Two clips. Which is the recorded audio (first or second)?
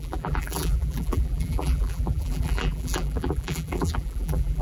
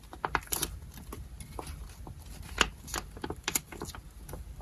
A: second